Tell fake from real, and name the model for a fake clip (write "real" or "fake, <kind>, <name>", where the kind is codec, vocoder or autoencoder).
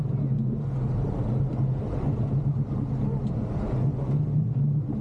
real